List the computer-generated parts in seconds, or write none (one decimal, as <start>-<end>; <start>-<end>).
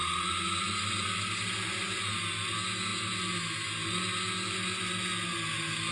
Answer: none